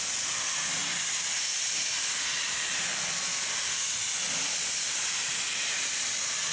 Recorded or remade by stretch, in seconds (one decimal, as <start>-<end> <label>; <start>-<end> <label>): 0.0-6.5 remade